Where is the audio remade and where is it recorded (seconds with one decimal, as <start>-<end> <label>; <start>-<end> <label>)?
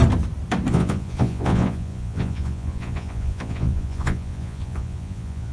0.0-0.7 recorded; 0.7-5.5 remade